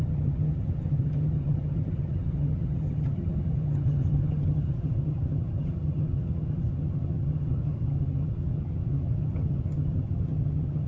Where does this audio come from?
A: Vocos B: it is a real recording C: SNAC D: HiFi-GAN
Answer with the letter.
D